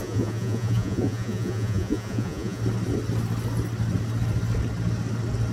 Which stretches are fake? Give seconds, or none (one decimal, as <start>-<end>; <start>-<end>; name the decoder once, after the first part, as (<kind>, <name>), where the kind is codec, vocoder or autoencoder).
0.0-2.6 (vocoder, Vocos)